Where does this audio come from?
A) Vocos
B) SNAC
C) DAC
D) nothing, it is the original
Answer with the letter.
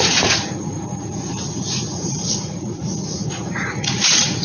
A